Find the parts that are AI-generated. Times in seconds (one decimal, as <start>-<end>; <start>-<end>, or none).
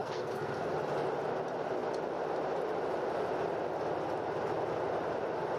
0.0-0.7